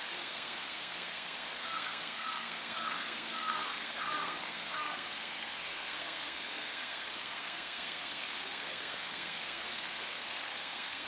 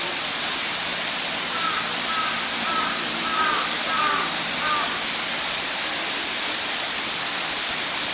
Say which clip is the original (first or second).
second